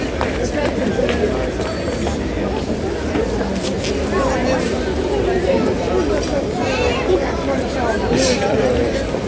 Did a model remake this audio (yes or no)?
no